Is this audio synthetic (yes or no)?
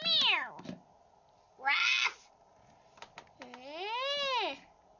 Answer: no